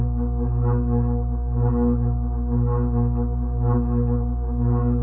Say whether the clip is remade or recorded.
recorded